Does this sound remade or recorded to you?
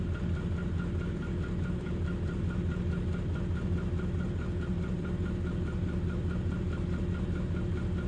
recorded